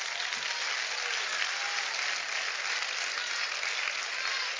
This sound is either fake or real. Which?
real